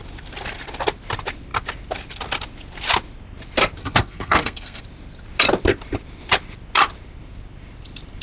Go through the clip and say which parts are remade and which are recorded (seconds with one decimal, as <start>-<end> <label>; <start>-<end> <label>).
0.0-3.8 recorded; 3.8-4.8 remade; 4.8-8.2 recorded